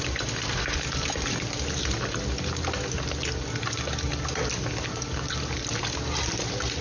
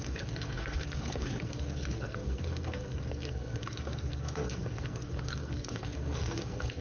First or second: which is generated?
second